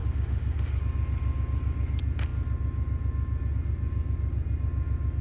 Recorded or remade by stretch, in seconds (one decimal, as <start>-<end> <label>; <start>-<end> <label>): 0.0-0.8 remade; 0.8-5.2 recorded